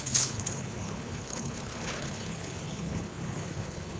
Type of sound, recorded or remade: remade